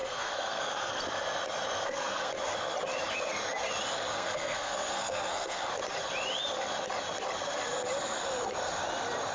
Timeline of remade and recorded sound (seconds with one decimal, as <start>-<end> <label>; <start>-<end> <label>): 0.0-1.0 remade; 1.0-1.8 recorded; 1.8-2.3 remade; 2.3-4.1 recorded; 4.1-5.8 remade; 5.8-9.3 recorded